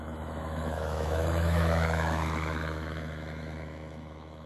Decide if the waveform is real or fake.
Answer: fake